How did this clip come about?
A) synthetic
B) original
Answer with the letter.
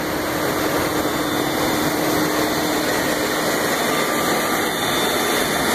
B